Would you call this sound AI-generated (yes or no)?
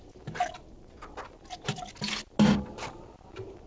no